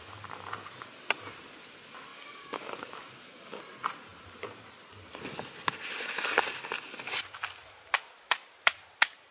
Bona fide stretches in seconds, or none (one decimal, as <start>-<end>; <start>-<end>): 0.0-2.1; 3.6-9.3

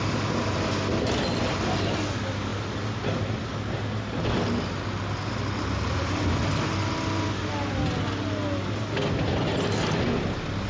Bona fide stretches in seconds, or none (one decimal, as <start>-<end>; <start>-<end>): 0.0-10.7

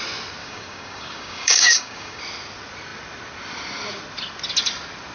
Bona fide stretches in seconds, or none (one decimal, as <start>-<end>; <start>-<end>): 0.0-0.4; 2.2-5.1

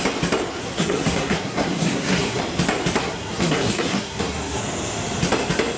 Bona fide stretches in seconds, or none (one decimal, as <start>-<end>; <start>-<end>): 0.0-0.6; 2.4-3.0; 4.6-5.8

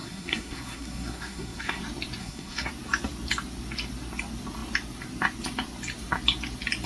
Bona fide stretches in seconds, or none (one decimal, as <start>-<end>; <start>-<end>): 1.8-2.2; 2.7-6.9